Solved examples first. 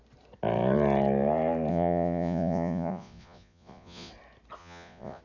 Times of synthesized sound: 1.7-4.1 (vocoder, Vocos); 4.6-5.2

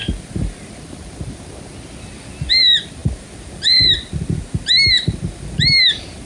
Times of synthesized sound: none

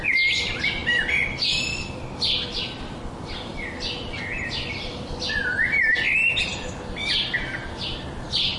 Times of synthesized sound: 0.8-3.0 (vocoder, BigVGAN v2)

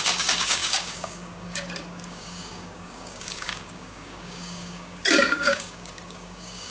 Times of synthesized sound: 0.0-6.7 (codec, DAC)